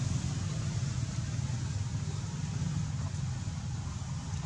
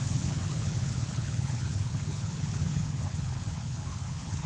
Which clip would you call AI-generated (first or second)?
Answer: second